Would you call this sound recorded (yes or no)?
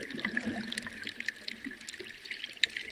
yes